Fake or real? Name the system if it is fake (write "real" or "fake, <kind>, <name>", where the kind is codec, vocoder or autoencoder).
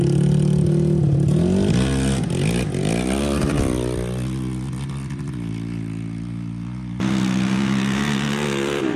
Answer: real